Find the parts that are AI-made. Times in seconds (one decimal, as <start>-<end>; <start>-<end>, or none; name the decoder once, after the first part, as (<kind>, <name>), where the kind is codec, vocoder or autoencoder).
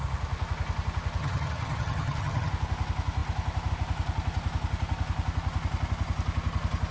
1.2-2.5 (vocoder, HiFi-GAN)